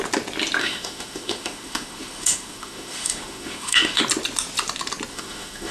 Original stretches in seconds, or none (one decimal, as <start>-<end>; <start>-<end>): 0.0-0.6; 4.0-5.1